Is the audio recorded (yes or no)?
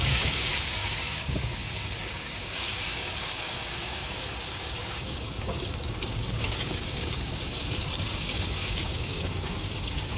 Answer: no